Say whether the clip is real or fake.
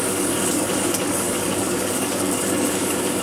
fake